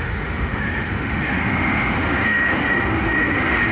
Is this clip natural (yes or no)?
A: no